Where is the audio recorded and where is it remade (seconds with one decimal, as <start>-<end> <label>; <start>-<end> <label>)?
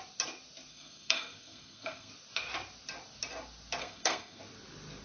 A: 0.0-0.7 recorded; 0.7-2.1 remade; 2.1-3.8 recorded; 3.8-4.4 remade; 4.4-5.0 recorded